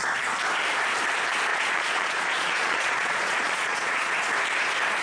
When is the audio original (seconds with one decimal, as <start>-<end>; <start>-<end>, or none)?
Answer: 0.0-1.5; 4.1-5.0